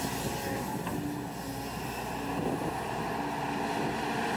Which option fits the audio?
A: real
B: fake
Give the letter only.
A